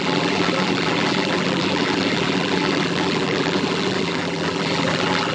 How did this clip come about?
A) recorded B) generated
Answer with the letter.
B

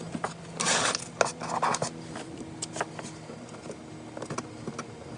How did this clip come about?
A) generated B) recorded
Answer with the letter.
B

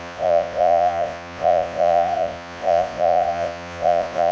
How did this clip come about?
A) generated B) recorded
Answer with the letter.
A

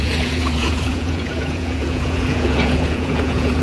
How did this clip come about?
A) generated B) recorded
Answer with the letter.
A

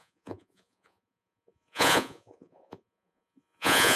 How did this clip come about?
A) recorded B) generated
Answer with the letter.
B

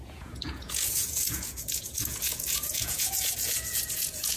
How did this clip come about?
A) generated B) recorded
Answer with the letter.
A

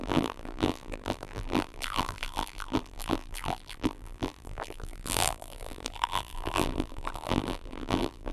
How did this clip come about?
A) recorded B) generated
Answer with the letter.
B